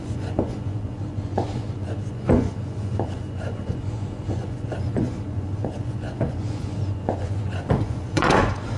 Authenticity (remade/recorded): remade